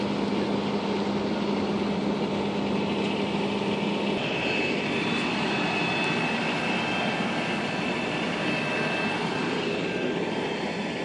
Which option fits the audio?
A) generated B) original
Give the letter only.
B